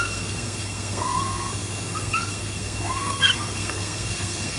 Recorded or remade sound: remade